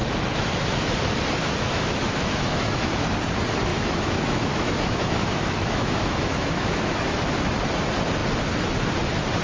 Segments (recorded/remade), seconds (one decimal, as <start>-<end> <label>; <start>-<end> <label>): 0.0-0.5 remade; 0.5-1.4 recorded; 1.4-2.9 remade; 2.9-3.7 recorded; 3.7-7.3 remade; 7.3-9.4 recorded